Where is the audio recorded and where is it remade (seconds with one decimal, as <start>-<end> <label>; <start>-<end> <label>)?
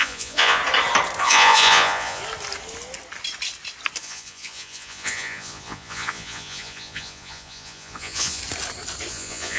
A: 0.0-0.6 remade; 0.6-1.2 recorded; 1.2-2.2 remade; 2.2-4.0 recorded; 4.0-8.4 remade; 8.4-9.1 recorded; 9.1-9.6 remade